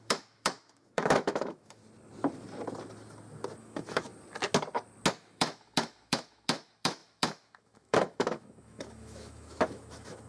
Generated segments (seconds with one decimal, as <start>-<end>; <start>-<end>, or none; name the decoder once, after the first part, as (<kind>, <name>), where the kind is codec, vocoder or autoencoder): 0.0-1.8 (autoencoder, DAC-VAE); 3.6-4.1; 5.1-10.3